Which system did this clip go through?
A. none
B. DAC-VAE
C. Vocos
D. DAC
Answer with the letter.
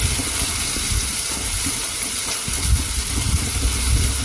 A